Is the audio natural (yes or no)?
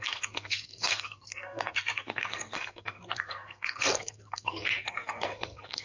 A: no